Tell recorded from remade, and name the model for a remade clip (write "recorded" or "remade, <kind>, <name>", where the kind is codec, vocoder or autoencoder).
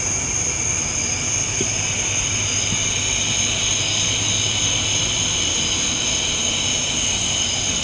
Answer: recorded